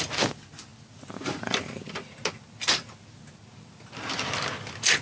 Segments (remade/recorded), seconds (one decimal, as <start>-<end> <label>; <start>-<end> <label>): 0.0-5.0 recorded